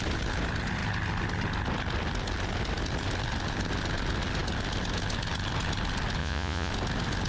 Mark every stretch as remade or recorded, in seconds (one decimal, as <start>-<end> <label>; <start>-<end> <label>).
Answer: 0.0-6.2 recorded; 6.2-6.7 remade; 6.7-7.3 recorded

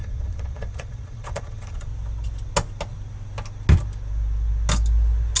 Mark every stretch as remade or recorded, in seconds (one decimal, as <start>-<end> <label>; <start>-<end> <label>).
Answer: 0.0-1.9 remade; 1.9-5.4 recorded

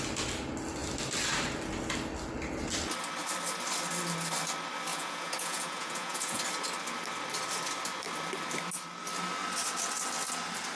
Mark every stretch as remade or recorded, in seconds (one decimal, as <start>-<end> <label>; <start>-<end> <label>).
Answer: 0.0-4.9 recorded; 4.9-6.4 remade; 6.4-10.7 recorded

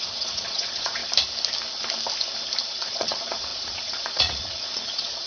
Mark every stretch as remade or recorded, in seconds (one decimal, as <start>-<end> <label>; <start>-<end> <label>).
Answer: 0.0-1.0 remade; 1.0-2.7 recorded; 2.7-5.3 remade

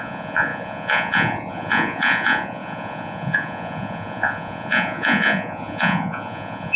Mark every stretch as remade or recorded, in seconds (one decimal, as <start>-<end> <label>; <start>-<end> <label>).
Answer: 0.0-6.8 remade

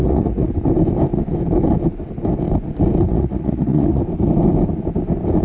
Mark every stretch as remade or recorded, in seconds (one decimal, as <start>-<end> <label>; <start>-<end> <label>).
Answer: 0.0-0.5 remade; 0.5-3.1 recorded; 3.1-4.0 remade; 4.0-5.4 recorded

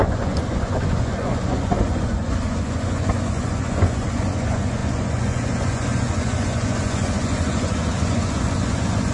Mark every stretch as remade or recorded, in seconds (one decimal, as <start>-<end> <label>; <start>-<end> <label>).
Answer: 0.0-9.1 remade